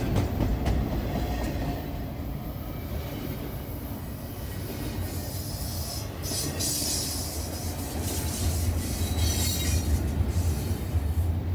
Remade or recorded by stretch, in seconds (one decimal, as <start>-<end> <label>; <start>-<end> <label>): 0.0-11.5 recorded